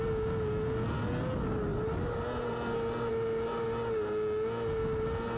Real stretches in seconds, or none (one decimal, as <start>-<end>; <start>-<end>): 0.0-5.4